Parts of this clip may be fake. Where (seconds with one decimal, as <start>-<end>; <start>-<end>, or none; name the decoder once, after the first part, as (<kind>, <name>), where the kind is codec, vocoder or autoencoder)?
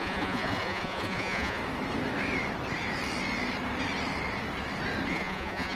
0.0-1.6 (vocoder, Vocos); 5.1-5.8